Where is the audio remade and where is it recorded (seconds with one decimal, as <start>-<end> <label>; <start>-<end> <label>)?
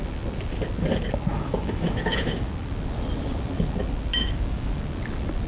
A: 0.0-1.3 recorded; 1.3-2.5 remade; 2.5-4.1 recorded; 4.1-4.8 remade; 4.8-5.5 recorded